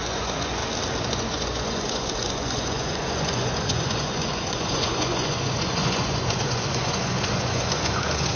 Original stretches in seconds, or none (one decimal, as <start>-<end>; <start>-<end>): 0.6-1.1